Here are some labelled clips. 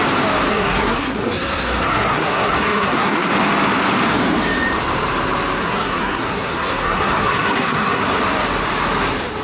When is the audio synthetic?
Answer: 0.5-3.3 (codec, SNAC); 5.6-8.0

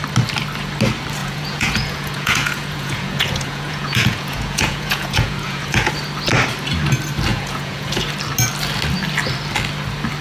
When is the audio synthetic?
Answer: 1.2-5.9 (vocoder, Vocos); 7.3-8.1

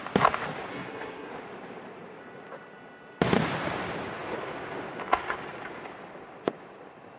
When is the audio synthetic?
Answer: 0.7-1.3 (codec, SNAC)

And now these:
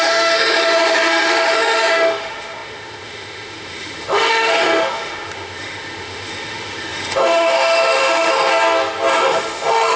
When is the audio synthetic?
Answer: 0.0-8.5 (autoencoder, DAC-VAE); 9.1-10.0